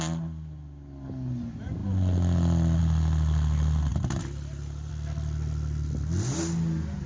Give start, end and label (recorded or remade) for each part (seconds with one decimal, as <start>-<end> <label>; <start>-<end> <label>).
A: 0.0-3.9 recorded; 3.9-4.9 remade; 4.9-7.1 recorded